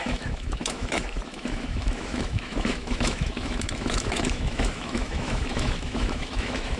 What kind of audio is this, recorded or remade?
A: remade